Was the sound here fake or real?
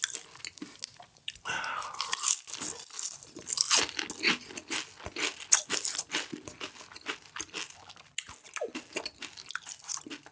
real